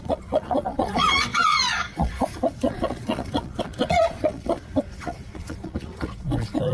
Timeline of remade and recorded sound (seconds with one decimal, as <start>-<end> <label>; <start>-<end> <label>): 0.0-6.7 remade